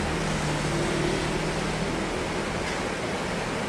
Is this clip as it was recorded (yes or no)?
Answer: yes